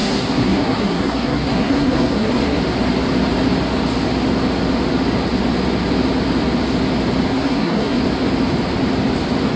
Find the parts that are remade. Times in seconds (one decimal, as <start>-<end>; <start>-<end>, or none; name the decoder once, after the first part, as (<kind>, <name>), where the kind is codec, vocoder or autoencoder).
0.0-2.6 (codec, SNAC); 7.3-8.0